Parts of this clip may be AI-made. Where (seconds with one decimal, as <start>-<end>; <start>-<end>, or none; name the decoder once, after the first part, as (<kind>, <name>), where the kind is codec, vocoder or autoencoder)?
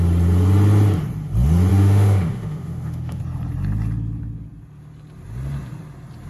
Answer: 1.7-3.2 (autoencoder, DAC-VAE)